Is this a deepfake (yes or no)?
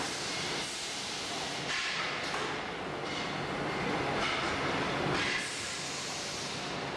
no